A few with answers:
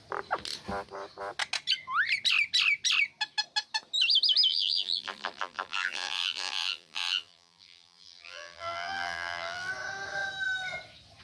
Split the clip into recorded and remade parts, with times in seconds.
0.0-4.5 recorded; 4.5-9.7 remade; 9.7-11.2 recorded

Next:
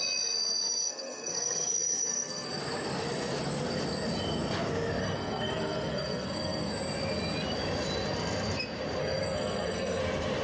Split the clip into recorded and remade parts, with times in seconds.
0.0-0.8 recorded; 0.8-2.5 remade; 2.5-5.0 recorded; 5.0-6.7 remade; 6.7-9.0 recorded; 9.0-10.0 remade; 10.0-10.4 recorded

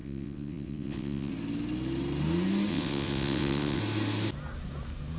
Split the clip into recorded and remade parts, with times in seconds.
0.0-1.3 remade; 1.3-2.7 recorded; 2.7-3.8 remade; 3.8-5.2 recorded